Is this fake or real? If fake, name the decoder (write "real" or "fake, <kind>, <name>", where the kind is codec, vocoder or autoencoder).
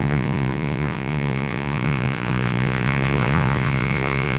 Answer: fake, vocoder, Vocos